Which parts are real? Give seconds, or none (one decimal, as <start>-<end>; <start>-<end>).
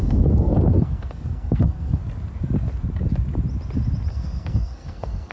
2.0-4.1